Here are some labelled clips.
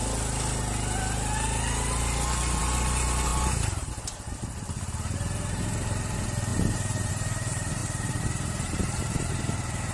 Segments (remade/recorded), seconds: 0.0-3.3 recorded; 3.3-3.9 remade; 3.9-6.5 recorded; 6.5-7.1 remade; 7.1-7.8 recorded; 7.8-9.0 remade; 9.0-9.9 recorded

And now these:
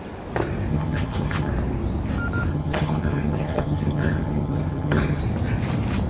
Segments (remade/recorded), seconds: 0.0-0.7 recorded; 0.7-1.5 remade; 1.5-2.5 recorded; 2.5-5.2 remade; 5.2-6.1 recorded

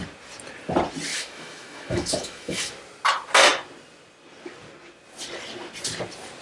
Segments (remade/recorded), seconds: 0.0-1.1 recorded; 1.1-2.7 remade; 2.7-6.4 recorded

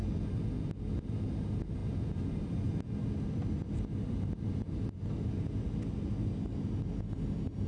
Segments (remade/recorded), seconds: 0.0-7.7 recorded